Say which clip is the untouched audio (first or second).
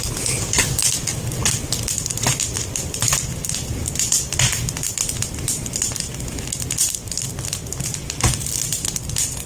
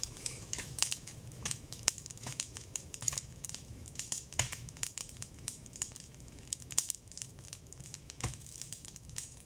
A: first